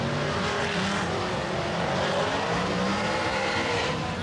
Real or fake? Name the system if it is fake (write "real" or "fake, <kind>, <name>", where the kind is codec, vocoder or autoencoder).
real